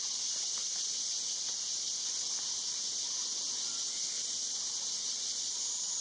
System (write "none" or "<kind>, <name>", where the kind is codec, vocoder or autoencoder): none